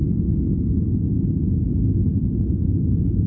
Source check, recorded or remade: recorded